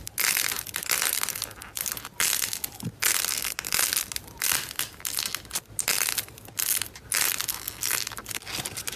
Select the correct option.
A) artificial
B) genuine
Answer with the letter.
B